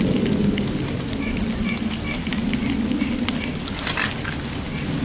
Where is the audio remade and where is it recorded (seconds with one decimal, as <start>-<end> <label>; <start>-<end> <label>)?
0.0-5.0 recorded